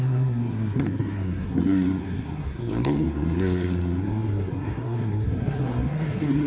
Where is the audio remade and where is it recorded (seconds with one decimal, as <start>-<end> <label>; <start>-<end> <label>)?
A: 0.0-6.5 remade